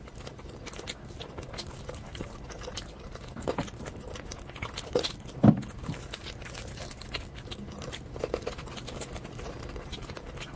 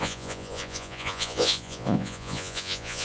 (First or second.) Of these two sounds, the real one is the first